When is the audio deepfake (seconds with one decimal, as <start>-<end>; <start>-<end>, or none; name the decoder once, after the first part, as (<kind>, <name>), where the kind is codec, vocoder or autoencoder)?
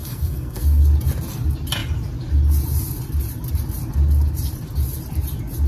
0.0-0.8 (codec, SNAC)